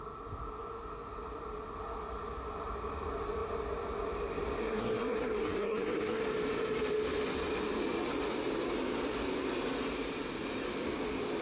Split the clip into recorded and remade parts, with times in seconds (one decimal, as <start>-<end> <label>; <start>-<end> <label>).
0.0-4.6 recorded; 4.6-6.2 remade; 6.2-11.4 recorded